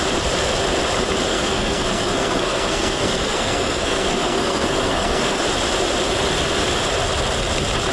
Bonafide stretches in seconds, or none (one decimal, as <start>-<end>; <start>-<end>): 0.0-1.3; 5.4-7.9